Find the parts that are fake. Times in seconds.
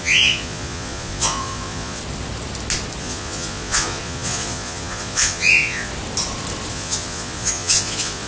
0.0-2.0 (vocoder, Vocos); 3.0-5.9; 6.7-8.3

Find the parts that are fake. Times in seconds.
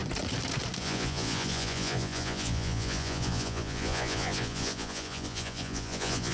0.8-6.3 (vocoder, Vocos)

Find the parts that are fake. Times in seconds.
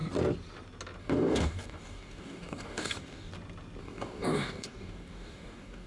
1.0-3.3 (codec, DAC); 3.8-5.9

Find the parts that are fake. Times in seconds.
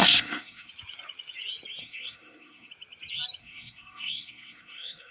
0.0-0.7 (codec, SNAC); 1.8-2.7; 3.4-5.1